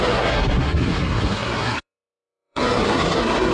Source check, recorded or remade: remade